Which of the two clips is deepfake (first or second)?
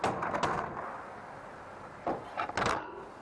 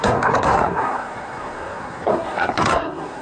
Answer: second